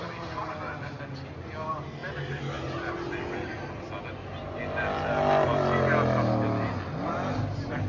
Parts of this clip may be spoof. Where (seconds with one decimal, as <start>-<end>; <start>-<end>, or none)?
none